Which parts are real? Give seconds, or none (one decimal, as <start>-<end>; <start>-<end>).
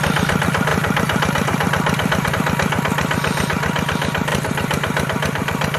0.0-0.7; 2.3-4.3